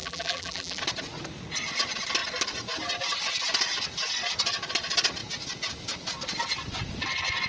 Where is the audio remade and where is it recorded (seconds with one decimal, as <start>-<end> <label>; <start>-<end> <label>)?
0.0-0.8 remade; 0.8-7.5 recorded